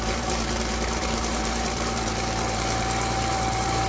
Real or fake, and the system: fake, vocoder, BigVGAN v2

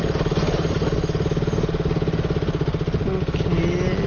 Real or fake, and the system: real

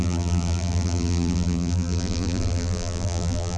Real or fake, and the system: fake, vocoder, BigVGAN v2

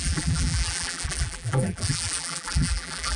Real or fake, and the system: fake, vocoder, BigVGAN v2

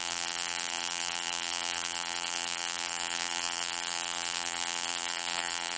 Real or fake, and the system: fake, vocoder, BigVGAN v2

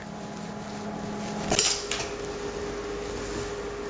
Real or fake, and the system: real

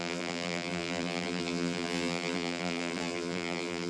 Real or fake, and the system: fake, vocoder, BigVGAN v2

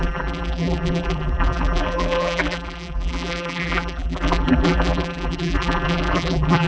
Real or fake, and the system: fake, vocoder, BigVGAN v2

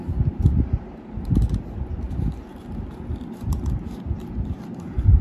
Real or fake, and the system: real